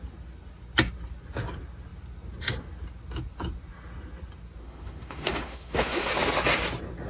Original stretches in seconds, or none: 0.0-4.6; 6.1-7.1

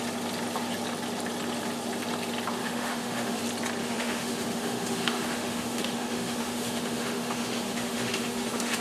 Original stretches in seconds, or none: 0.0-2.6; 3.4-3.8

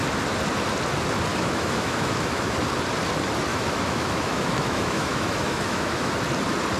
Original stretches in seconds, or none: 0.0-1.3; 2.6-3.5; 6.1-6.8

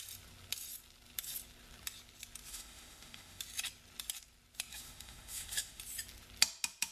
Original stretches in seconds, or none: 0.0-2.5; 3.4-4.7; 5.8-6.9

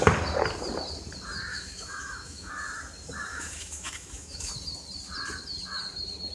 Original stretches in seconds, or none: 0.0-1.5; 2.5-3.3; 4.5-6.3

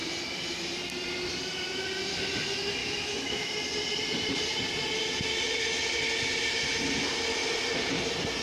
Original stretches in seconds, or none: 0.0-2.8; 3.5-8.4